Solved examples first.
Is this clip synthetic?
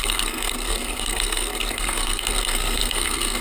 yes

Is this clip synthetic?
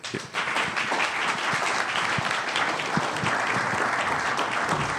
no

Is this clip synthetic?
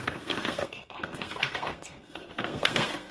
yes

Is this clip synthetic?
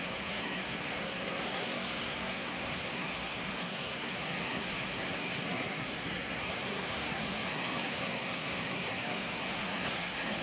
yes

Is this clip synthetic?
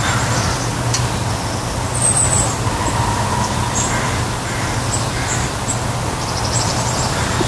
no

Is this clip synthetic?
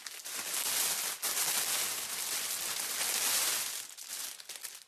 no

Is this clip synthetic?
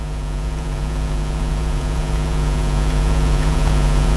yes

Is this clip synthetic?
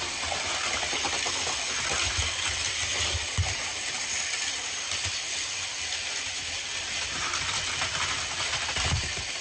no